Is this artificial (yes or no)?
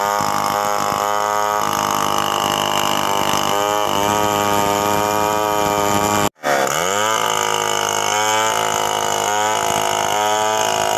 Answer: no